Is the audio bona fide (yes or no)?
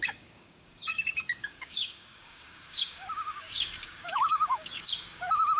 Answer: no